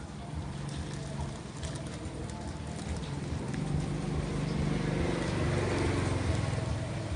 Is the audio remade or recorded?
recorded